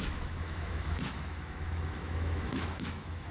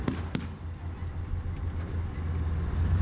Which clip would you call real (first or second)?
second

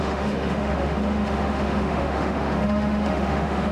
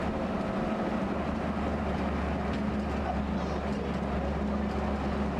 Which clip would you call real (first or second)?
second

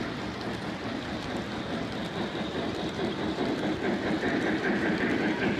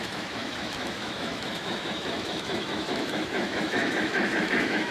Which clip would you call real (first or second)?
first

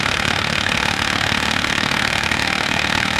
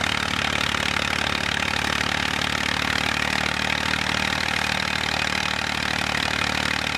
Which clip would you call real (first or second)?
second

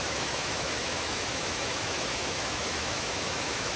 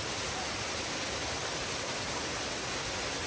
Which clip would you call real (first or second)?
second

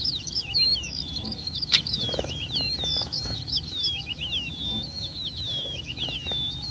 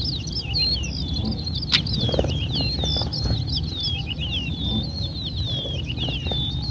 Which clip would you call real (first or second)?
second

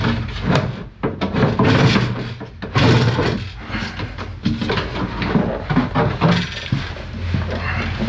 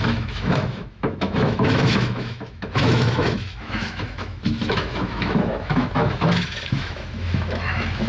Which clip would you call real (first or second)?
first